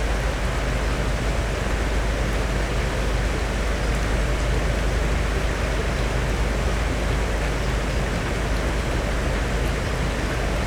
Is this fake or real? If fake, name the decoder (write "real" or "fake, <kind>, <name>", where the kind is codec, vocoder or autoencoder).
real